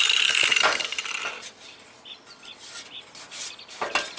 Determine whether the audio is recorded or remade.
recorded